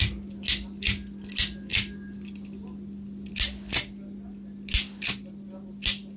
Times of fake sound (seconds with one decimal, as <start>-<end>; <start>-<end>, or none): none